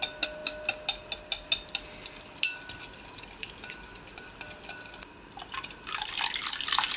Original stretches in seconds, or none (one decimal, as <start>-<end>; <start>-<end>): 0.0-7.0